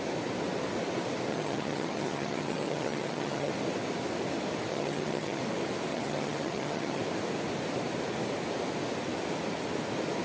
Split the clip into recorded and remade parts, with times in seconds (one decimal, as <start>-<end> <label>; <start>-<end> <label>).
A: 0.0-1.3 recorded; 1.3-3.5 remade; 3.5-4.7 recorded; 4.7-5.4 remade; 5.4-5.9 recorded; 5.9-7.0 remade; 7.0-10.2 recorded